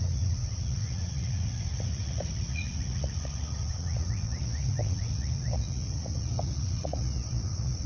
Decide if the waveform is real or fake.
fake